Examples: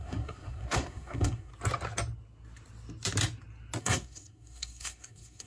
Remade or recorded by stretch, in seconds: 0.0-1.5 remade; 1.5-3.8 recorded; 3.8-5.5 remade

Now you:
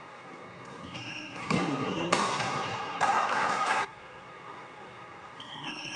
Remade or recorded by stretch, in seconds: 0.0-6.0 remade

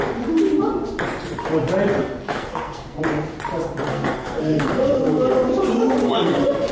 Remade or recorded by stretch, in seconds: 0.0-2.0 recorded; 2.0-3.0 remade; 3.0-3.9 recorded; 3.9-5.3 remade; 5.3-6.0 recorded; 6.0-6.7 remade

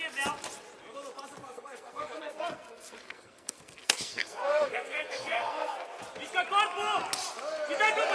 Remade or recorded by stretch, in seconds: 0.0-1.4 recorded; 1.4-6.0 remade; 6.0-8.1 recorded

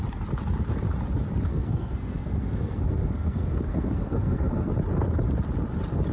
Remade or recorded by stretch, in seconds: 0.0-1.5 recorded; 1.5-4.7 remade; 4.7-6.1 recorded